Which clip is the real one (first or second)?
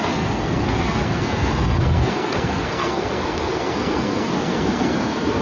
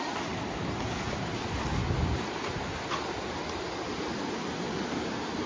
second